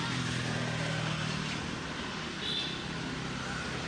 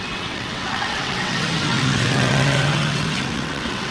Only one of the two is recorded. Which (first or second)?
first